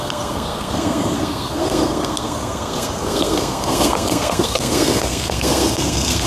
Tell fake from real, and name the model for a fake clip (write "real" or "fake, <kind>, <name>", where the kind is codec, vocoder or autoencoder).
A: fake, codec, SNAC